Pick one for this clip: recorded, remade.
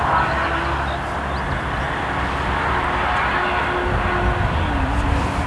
recorded